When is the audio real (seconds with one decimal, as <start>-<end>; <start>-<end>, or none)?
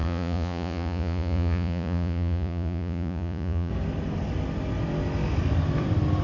3.7-6.2